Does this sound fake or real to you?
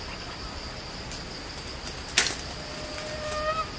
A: real